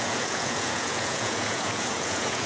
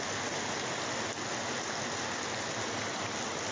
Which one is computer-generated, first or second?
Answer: first